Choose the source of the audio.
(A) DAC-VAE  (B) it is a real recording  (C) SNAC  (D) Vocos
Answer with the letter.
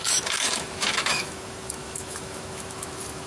A